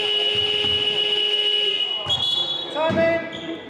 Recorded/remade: recorded